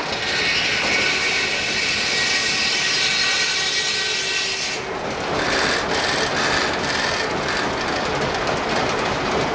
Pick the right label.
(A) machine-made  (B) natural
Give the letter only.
B